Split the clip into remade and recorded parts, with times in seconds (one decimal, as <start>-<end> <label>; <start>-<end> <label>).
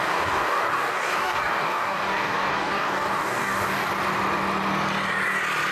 0.0-3.9 remade; 3.9-5.7 recorded